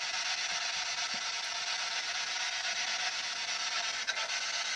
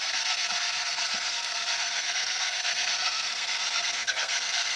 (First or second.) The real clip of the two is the first